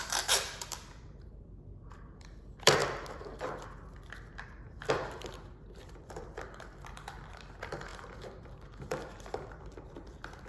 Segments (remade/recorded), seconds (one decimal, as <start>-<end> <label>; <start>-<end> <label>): 0.0-2.8 remade; 2.8-4.9 recorded; 4.9-10.5 remade